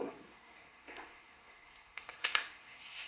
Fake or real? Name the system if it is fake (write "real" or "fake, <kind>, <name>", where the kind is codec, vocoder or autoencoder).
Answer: fake, codec, SNAC